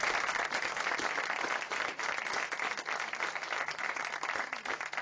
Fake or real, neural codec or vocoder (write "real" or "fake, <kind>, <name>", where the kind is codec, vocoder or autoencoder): real